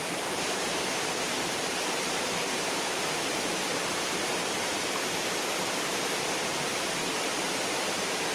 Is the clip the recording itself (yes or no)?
no